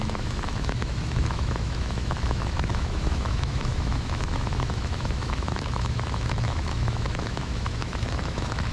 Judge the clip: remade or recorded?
remade